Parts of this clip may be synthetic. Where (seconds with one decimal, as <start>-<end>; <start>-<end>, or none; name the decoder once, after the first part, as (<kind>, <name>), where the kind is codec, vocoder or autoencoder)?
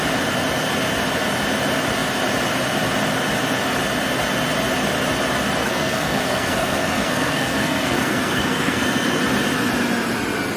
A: 5.6-9.2 (codec, SNAC)